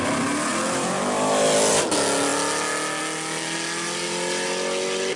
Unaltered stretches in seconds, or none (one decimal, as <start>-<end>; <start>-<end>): 0.0-5.2